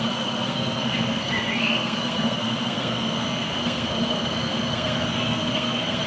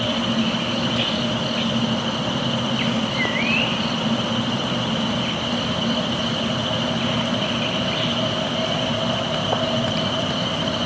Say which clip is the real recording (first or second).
second